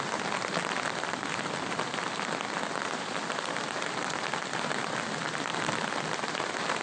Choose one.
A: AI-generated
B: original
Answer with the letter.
A